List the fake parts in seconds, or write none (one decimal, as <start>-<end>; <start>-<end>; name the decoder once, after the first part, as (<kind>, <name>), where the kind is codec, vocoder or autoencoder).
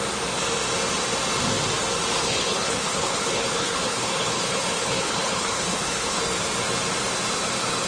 2.2-6.2 (codec, HILCodec)